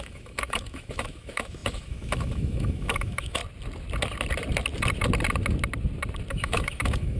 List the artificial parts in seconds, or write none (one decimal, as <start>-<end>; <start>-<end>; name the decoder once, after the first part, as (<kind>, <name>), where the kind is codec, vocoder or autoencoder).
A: 0.0-3.4 (autoencoder, DAC-VAE); 6.3-7.2